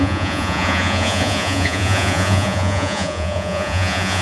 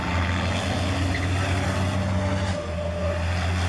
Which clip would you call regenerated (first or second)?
first